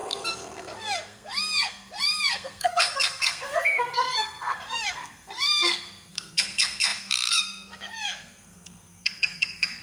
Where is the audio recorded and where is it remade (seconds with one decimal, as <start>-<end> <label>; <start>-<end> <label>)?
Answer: 0.0-9.8 remade